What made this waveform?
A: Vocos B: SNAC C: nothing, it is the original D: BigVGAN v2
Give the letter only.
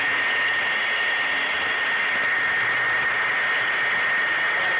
C